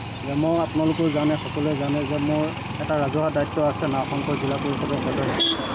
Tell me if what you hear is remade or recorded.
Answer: recorded